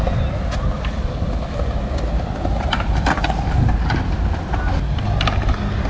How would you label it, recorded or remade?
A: recorded